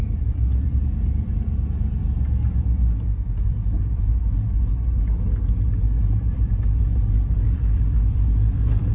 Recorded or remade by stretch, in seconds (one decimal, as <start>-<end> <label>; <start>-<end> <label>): 0.0-2.0 remade; 2.0-2.6 recorded; 2.6-4.2 remade; 4.2-6.0 recorded; 6.0-8.9 remade